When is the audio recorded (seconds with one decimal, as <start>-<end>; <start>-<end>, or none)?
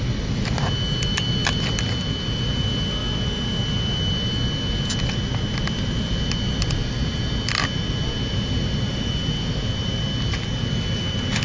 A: 0.0-11.4